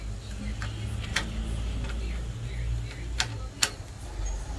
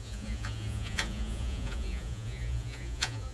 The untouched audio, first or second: first